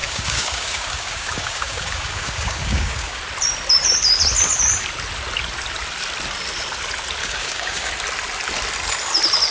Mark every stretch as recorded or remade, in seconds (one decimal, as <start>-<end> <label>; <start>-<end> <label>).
0.0-3.2 remade; 3.2-7.2 recorded; 7.2-7.9 remade; 7.9-9.5 recorded